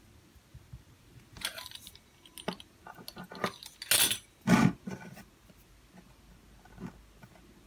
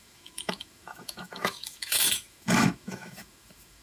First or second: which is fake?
second